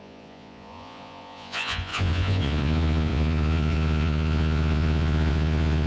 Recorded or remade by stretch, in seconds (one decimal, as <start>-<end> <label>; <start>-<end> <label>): 0.0-5.9 remade